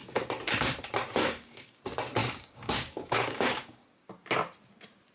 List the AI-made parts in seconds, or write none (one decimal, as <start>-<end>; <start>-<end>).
1.2-1.8; 2.2-4.0